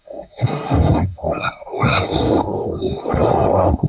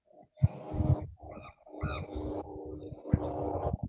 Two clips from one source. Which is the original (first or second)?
second